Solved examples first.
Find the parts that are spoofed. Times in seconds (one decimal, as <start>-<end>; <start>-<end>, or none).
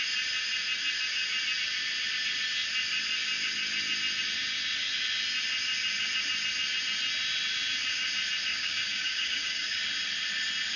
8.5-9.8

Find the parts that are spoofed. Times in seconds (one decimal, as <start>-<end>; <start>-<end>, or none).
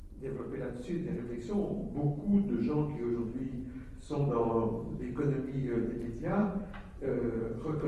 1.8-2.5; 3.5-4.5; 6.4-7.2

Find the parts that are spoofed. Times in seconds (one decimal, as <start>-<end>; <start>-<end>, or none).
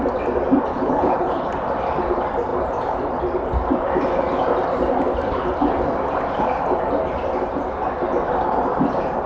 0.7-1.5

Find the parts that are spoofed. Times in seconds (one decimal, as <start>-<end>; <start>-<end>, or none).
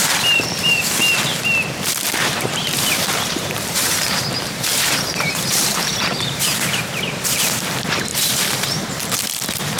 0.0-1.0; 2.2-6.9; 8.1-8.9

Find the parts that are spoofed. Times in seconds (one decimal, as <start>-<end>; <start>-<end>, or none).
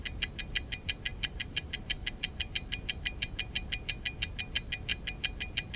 1.1-2.5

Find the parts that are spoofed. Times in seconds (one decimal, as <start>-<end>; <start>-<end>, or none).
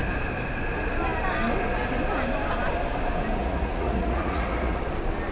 3.4-4.8